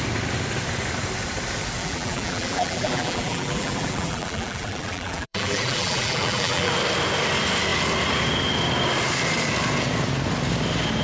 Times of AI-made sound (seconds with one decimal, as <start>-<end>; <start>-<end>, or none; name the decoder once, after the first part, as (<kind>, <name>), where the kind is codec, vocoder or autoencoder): 1.8-6.7 (vocoder, BigVGAN v2)